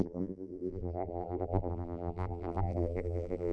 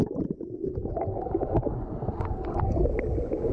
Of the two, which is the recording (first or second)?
second